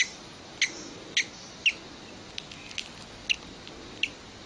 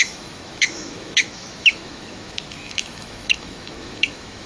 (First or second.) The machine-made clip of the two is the second